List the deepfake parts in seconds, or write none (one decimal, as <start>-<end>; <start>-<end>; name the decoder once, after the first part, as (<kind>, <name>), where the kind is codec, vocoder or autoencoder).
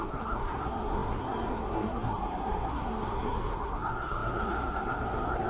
0.0-5.5 (codec, SNAC)